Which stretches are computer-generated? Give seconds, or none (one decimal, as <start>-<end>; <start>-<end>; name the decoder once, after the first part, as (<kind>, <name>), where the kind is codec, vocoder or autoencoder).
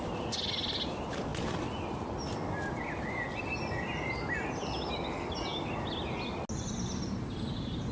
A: none